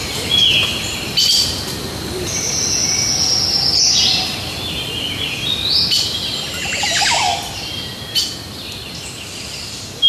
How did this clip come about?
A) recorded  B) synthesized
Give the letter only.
A